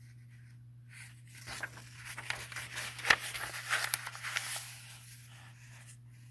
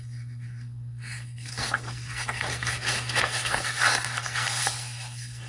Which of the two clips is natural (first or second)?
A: first